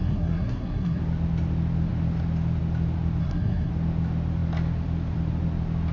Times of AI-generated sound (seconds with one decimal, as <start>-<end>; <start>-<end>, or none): 0.0-1.0; 3.2-3.7